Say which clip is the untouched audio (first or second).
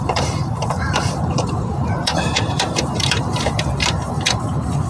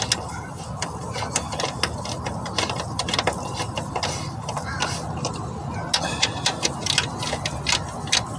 second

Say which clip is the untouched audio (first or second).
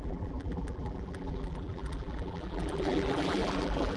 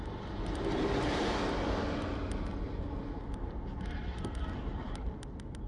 second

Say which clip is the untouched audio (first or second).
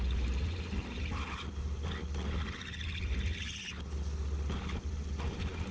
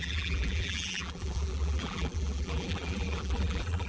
first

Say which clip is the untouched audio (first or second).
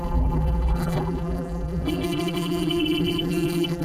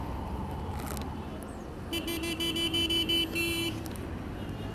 second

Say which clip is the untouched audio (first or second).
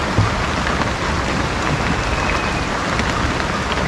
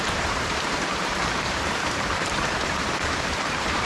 first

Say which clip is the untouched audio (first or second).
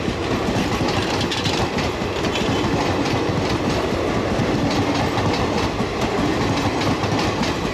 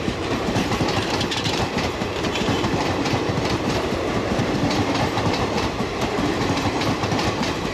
first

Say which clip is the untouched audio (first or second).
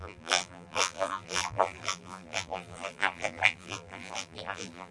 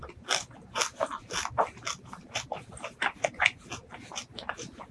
second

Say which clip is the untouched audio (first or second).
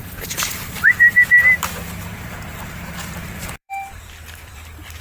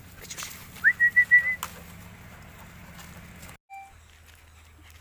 second